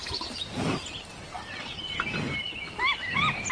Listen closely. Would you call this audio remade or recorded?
recorded